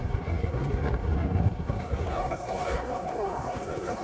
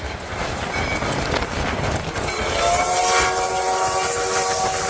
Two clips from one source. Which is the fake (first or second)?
first